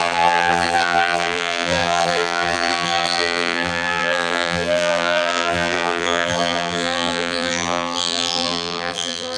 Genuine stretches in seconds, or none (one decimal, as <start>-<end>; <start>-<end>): none